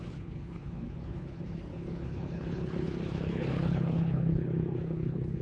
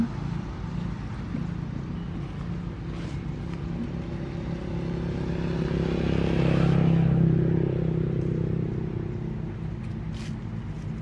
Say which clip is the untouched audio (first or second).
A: second